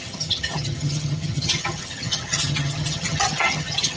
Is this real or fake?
fake